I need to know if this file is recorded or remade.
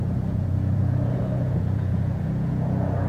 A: remade